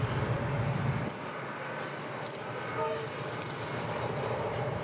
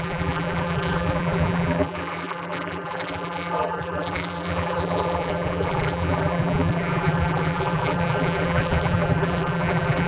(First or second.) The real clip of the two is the first